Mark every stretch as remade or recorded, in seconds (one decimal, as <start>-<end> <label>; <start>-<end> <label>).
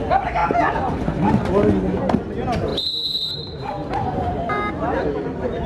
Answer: 0.0-2.7 recorded; 2.7-4.7 remade; 4.7-5.7 recorded